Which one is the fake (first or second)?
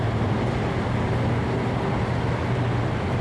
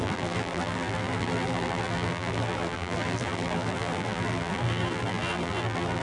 second